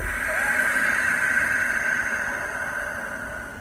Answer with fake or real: real